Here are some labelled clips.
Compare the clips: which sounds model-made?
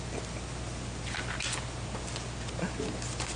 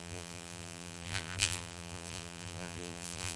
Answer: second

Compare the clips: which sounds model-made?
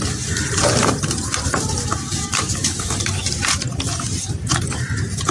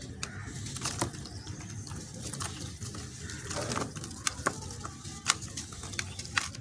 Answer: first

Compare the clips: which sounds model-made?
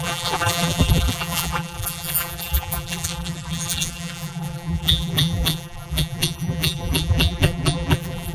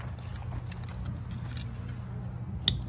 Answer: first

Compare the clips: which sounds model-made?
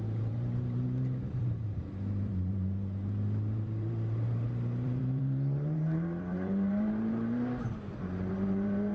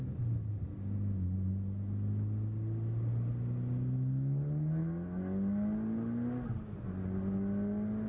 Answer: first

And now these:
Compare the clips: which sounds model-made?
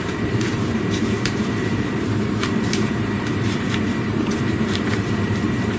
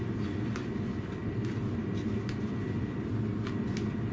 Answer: first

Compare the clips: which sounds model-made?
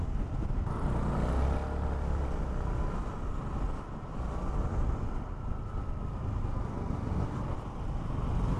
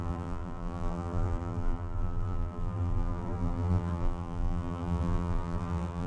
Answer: second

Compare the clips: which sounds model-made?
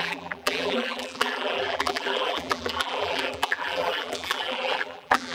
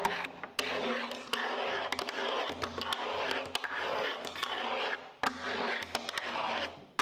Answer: first